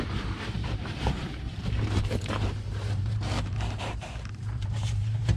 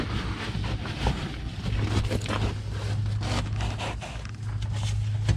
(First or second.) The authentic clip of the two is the second